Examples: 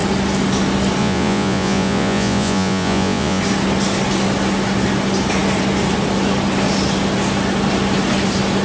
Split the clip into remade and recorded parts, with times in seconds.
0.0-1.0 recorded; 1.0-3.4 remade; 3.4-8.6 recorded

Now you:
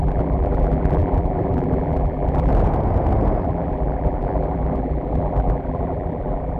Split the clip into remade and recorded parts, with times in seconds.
0.0-2.5 remade; 2.5-3.4 recorded; 3.4-6.6 remade

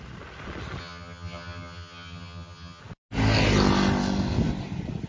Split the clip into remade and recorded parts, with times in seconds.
0.0-0.8 recorded; 0.8-2.8 remade; 2.8-5.1 recorded

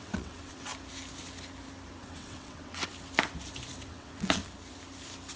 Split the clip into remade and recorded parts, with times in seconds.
0.0-0.7 remade; 0.7-2.0 recorded; 2.0-2.9 remade; 2.9-3.9 recorded; 3.9-4.4 remade; 4.4-5.4 recorded

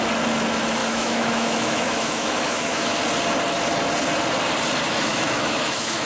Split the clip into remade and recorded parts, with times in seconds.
0.0-0.8 recorded; 0.8-3.0 remade; 3.0-5.1 recorded; 5.1-6.1 remade